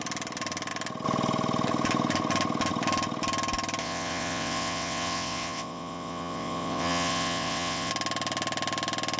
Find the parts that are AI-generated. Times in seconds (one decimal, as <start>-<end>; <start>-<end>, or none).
3.8-7.9